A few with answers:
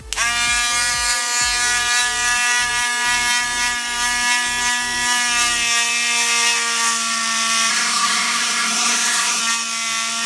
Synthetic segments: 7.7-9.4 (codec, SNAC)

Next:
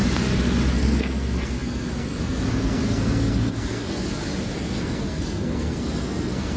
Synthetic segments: 0.7-4.2 (codec, SNAC); 4.8-6.6

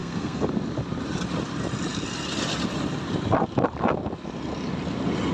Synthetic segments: 0.0-0.5 (codec, SNAC)

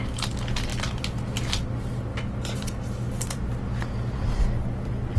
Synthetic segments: none

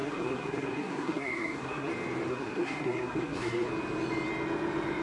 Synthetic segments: 0.0-1.9 (codec, SNAC); 2.3-3.7